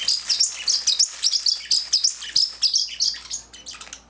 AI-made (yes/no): no